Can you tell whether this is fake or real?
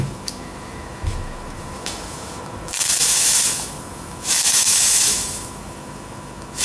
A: fake